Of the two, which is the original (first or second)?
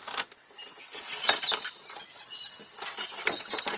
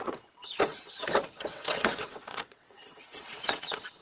first